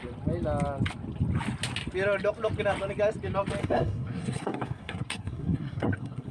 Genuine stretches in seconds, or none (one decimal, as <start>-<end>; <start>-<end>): 0.0-3.6